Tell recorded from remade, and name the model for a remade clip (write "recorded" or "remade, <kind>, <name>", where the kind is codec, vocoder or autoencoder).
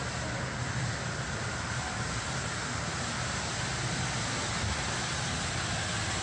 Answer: recorded